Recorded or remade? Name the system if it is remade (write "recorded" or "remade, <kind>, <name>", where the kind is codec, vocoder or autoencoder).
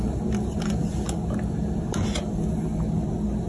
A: recorded